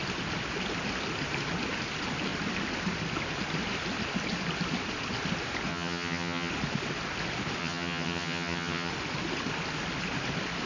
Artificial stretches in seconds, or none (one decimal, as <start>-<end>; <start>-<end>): 5.7-6.5; 7.6-8.9